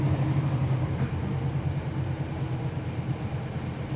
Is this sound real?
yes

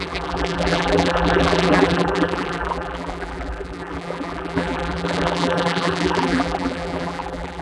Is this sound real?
no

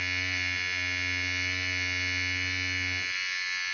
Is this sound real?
yes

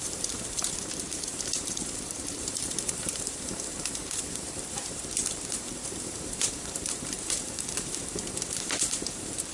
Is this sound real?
no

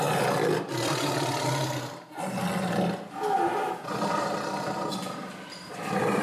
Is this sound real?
yes